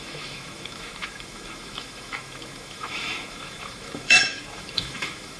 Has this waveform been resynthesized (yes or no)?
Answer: yes